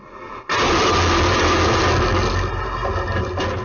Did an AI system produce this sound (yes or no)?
no